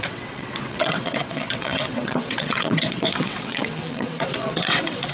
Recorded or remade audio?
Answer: remade